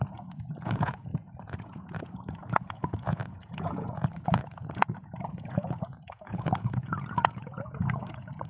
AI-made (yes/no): yes